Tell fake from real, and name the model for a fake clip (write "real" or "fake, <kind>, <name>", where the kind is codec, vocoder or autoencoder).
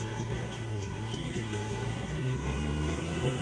fake, codec, SNAC